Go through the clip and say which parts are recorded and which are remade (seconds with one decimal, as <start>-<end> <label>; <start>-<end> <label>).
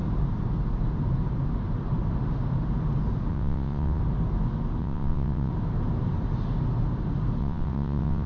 0.0-3.3 recorded; 3.3-4.0 remade; 4.0-4.8 recorded; 4.8-5.5 remade; 5.5-7.4 recorded; 7.4-8.3 remade